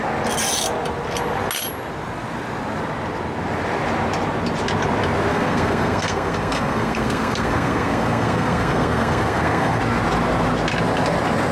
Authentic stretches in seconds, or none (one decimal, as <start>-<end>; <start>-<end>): 0.0-5.3; 9.8-11.5